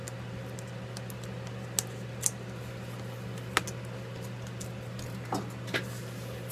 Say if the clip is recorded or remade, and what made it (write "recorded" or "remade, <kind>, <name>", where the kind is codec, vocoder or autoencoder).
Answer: recorded